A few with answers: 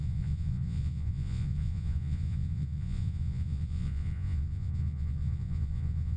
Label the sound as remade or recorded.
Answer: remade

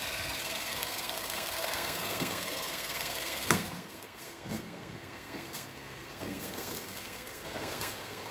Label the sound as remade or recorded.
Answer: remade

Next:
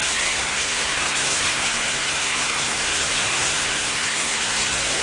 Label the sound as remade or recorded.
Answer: remade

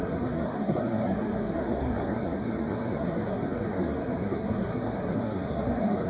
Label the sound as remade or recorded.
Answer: remade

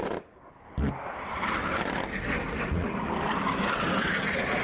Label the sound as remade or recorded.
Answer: recorded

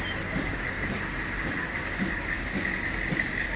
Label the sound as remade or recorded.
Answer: recorded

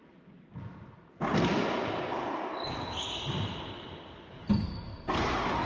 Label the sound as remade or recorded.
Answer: recorded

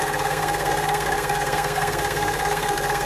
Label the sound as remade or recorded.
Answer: remade